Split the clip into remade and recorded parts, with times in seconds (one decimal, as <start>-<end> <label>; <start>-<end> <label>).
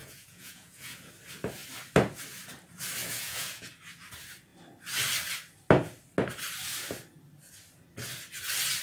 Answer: 0.0-1.1 remade; 1.1-3.0 recorded; 3.0-3.7 remade; 3.7-8.8 recorded